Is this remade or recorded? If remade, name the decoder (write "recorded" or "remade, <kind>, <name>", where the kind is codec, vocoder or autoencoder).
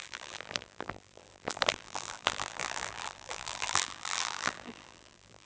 remade, vocoder, BigVGAN v2